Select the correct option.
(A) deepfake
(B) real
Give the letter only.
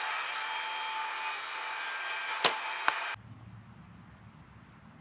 B